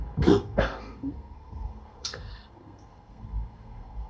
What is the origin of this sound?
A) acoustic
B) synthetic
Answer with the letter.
B